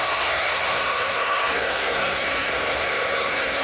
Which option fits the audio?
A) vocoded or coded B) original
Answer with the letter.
A